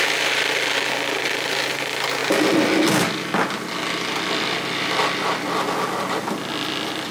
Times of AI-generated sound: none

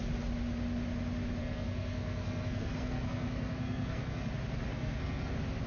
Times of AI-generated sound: 1.4-4.3; 4.7-5.3